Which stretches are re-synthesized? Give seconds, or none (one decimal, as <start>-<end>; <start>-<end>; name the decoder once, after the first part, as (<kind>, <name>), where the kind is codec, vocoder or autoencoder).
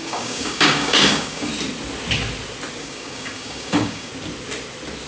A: 0.0-1.5 (codec, DAC); 2.8-4.1